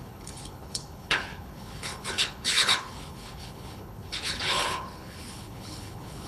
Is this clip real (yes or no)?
no